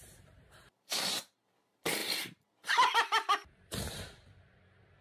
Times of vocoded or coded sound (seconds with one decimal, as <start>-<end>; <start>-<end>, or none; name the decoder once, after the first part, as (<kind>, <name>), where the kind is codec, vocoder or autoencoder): 0.0-5.0 (vocoder, BigVGAN v2)